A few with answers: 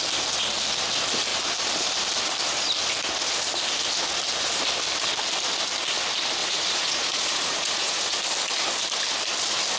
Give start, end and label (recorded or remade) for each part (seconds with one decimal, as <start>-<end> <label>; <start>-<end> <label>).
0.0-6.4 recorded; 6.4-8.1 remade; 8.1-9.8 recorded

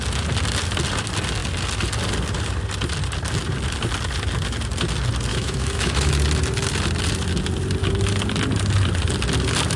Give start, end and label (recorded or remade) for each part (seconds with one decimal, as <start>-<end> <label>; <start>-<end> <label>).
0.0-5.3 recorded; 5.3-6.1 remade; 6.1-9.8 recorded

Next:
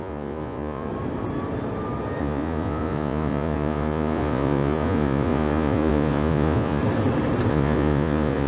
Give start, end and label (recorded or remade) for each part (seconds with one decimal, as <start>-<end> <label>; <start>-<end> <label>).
0.0-0.9 remade; 0.9-2.2 recorded; 2.2-6.8 remade; 6.8-7.5 recorded; 7.5-8.5 remade

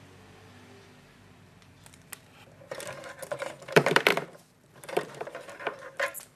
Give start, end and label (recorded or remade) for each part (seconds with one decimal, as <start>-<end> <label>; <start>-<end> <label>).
0.0-4.1 remade; 4.1-4.7 recorded; 4.7-6.4 remade